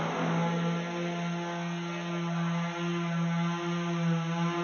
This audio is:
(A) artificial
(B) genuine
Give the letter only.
B